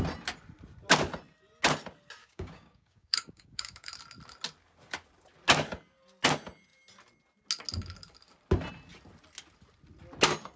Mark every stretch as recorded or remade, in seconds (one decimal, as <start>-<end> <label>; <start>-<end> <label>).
0.0-2.2 recorded; 2.2-3.9 remade; 3.9-10.6 recorded